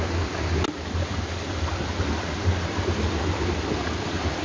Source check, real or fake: real